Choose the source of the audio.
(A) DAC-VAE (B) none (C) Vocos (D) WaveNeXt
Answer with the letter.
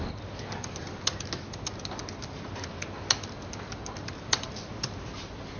B